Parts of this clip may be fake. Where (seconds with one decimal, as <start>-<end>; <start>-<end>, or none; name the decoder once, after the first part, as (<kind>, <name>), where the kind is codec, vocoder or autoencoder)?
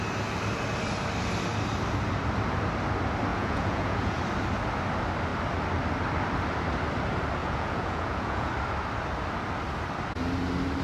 3.3-4.2 (vocoder, Vocos); 7.4-8.5